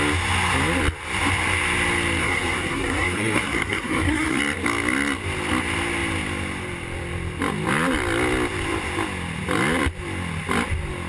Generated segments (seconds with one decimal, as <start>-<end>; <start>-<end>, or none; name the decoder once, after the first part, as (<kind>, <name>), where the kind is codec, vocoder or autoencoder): 2.2-4.4 (codec, SNAC)

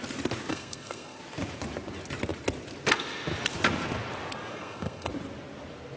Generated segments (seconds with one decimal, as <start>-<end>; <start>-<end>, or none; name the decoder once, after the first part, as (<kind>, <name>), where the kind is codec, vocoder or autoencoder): 0.5-1.2 (codec, SNAC); 4.5-5.1

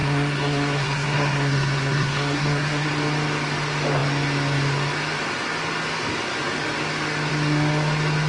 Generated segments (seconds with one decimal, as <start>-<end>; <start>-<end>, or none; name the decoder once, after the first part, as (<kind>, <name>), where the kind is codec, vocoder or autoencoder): 0.0-2.9 (codec, SNAC)

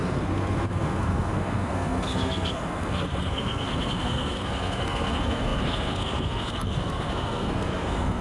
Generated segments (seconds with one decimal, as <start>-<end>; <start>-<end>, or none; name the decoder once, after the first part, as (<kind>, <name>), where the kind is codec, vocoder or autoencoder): 0.0-8.2 (codec, SNAC)

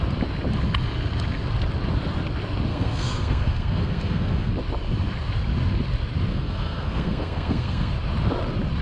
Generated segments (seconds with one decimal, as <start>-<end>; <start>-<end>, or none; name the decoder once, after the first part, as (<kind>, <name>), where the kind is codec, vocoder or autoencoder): 2.7-4.5 (codec, SNAC); 6.3-7.9